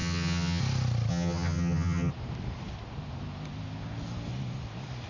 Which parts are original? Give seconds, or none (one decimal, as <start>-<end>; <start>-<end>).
0.6-1.1; 2.1-5.1